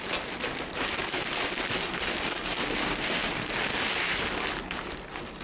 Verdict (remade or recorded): recorded